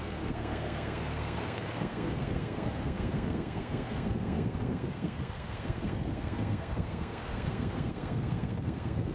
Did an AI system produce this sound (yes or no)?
yes